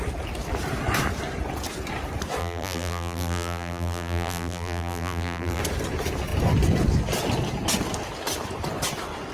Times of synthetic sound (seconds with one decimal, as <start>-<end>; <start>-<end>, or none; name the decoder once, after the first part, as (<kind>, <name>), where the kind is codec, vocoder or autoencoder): 2.4-5.6 (vocoder, BigVGAN v2)

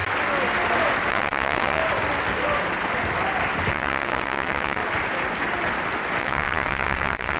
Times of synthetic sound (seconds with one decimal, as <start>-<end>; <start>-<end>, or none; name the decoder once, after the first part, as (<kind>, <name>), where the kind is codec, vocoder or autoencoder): 1.1-1.8 (vocoder, WaveNeXt); 3.7-4.8; 6.2-7.4

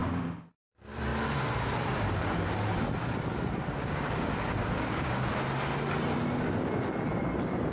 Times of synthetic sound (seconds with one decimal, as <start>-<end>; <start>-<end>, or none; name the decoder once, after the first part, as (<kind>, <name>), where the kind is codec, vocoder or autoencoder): 0.0-0.5 (codec, DAC); 3.8-5.3

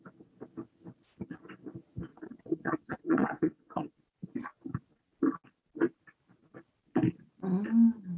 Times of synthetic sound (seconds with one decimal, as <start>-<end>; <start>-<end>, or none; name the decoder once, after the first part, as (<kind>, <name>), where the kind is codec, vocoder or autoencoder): 2.1-4.0 (vocoder, WaveNeXt)